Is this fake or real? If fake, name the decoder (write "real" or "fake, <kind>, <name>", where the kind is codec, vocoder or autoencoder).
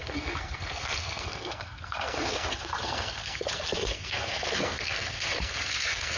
fake, codec, SNAC